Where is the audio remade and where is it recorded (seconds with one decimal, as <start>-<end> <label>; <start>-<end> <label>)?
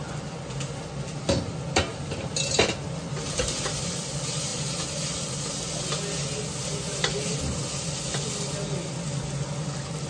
0.0-10.1 recorded